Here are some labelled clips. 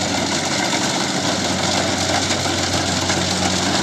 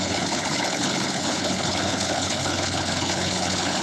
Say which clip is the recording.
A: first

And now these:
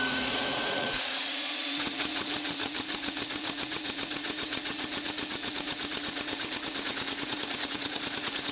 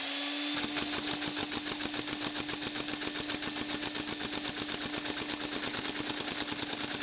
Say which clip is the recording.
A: second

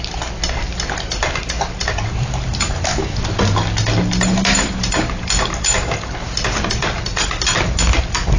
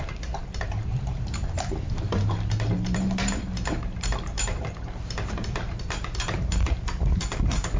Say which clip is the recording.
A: first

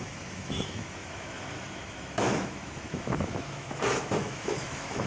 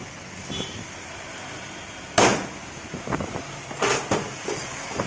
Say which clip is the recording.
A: second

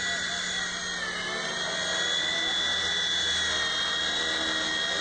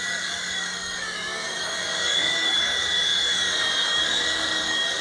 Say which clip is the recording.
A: first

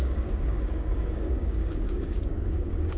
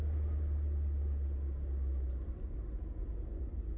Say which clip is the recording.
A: second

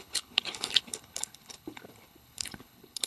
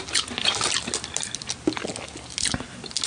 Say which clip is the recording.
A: second